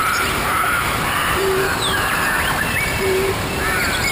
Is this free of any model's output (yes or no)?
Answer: no